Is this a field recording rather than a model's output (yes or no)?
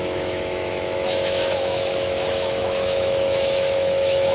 no